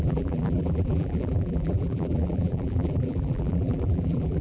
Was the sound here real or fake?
fake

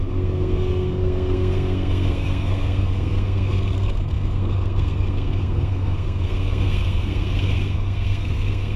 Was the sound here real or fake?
fake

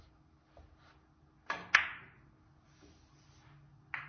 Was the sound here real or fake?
real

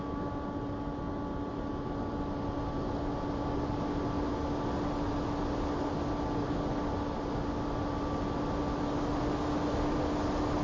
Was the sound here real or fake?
real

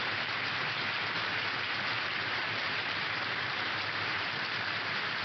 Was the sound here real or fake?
fake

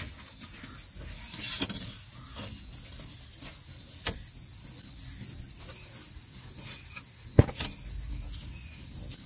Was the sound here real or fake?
real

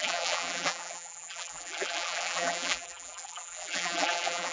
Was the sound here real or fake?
fake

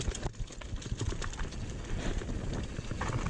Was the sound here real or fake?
real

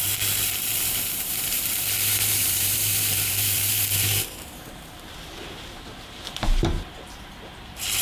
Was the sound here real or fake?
fake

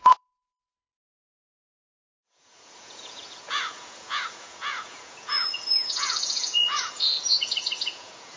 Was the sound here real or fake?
fake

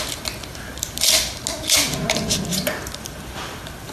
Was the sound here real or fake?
real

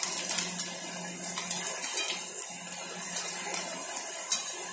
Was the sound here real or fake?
real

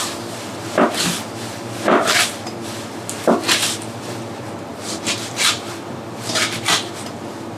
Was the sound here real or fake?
fake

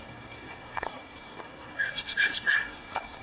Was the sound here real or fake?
fake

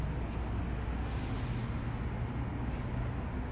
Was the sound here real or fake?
real